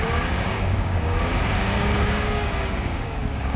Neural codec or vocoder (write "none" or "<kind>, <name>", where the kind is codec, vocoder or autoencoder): codec, DAC